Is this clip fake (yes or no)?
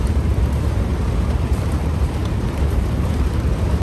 yes